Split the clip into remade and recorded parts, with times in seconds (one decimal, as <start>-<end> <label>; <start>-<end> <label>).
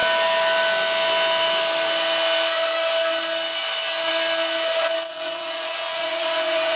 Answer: 0.0-5.1 recorded; 5.1-6.8 remade